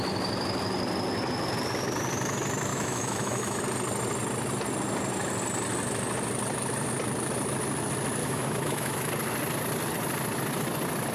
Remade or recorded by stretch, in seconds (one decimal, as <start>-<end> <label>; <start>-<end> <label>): 0.0-2.7 recorded; 2.7-3.6 remade; 3.6-8.2 recorded; 8.2-9.1 remade; 9.1-11.1 recorded